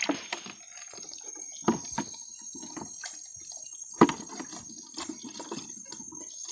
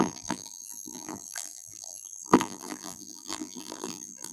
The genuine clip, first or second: first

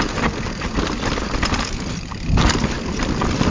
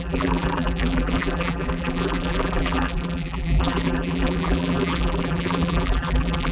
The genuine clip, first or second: first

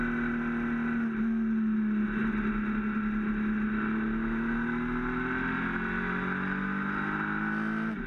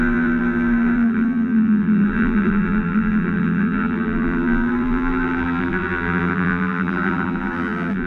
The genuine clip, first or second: first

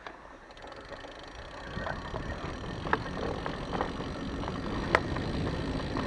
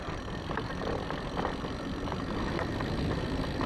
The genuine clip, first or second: first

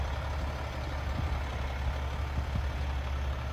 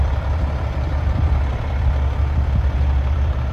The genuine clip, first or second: first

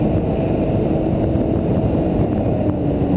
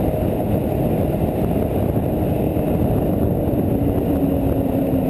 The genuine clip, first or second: first